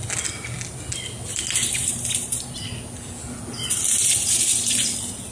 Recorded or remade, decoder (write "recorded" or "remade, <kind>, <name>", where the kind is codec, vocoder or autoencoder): recorded